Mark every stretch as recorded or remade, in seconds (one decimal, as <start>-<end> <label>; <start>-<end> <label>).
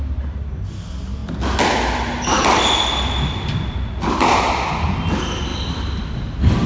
0.0-6.7 recorded